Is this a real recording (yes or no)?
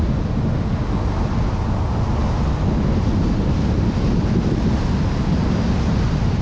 yes